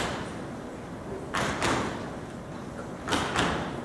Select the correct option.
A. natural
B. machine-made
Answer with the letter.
A